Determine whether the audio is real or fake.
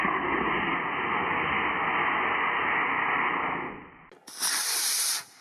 real